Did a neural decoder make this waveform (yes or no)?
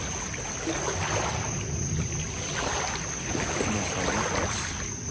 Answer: no